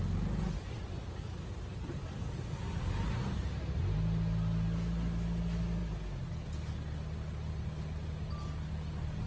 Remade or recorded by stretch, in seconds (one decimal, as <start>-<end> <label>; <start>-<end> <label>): 0.0-9.3 recorded